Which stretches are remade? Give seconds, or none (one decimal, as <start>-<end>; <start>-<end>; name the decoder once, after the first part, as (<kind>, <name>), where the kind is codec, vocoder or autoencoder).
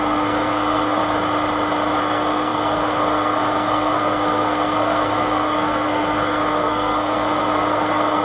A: 0.0-1.0 (codec, SNAC); 2.0-8.2